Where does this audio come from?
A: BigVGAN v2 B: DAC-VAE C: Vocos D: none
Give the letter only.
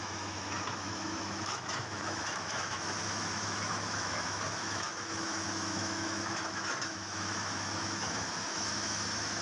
B